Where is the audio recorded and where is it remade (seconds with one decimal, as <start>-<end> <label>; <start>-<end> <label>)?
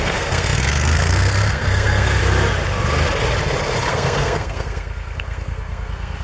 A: 0.0-2.2 remade; 2.2-3.9 recorded; 3.9-6.2 remade